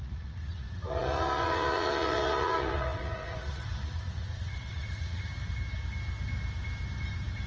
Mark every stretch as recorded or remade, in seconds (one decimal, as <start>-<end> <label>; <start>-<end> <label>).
0.0-5.3 remade; 5.3-7.5 recorded